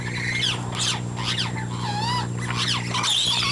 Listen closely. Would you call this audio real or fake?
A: real